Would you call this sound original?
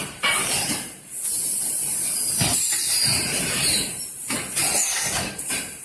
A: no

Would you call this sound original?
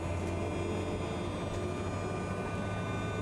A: yes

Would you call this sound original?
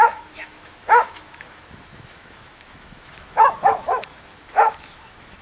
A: no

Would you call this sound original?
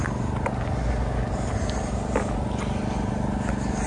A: yes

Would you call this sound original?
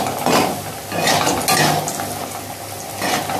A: yes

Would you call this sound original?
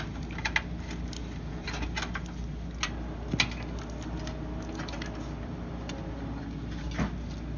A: yes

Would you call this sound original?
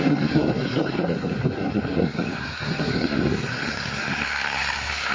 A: no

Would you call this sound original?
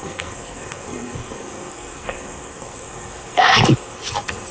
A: no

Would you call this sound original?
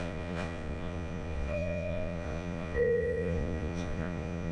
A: no